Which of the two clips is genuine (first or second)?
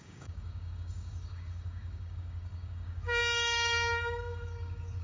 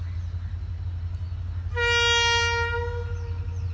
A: second